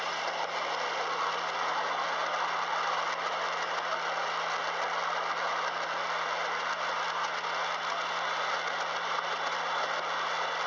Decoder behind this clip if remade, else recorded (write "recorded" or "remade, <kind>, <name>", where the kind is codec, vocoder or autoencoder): recorded